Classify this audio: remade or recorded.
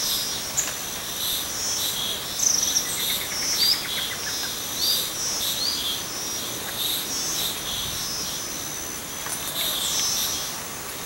recorded